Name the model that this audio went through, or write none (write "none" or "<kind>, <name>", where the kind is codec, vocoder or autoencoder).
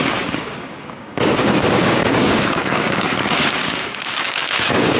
codec, DAC